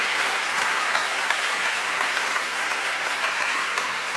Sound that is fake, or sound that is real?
fake